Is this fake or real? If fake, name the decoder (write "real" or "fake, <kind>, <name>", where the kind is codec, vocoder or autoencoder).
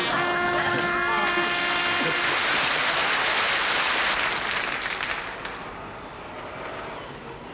real